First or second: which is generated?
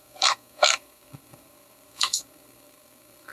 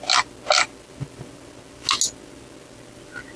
first